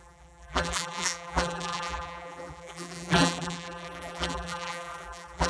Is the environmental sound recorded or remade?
remade